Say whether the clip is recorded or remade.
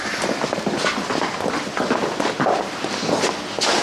recorded